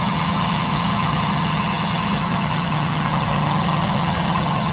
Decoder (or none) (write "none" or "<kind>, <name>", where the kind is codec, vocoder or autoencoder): vocoder, HiFi-GAN